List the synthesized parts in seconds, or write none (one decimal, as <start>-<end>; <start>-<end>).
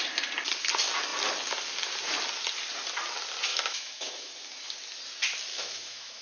3.5-4.3; 5.5-6.2